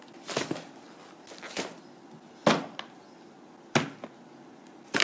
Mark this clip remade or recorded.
recorded